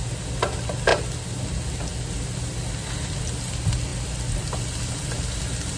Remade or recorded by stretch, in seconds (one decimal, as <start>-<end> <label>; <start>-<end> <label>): 0.0-5.8 recorded